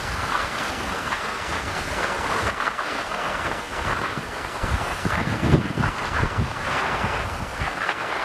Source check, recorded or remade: remade